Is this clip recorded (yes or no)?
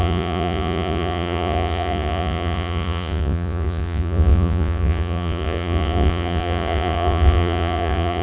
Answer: no